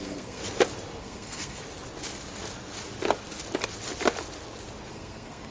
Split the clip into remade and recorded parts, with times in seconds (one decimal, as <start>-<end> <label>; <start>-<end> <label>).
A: 0.0-0.4 remade; 0.4-1.0 recorded; 1.0-1.6 remade; 1.6-4.9 recorded; 4.9-5.5 remade